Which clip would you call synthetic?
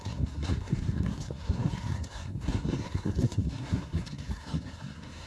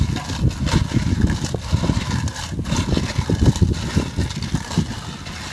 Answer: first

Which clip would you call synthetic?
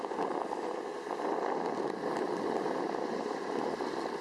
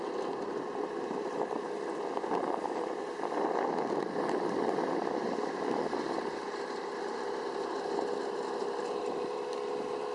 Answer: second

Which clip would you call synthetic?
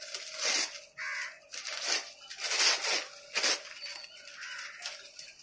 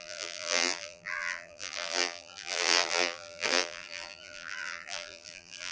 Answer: second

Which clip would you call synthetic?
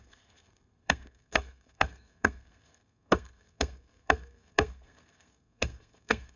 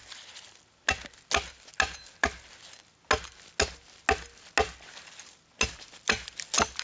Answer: first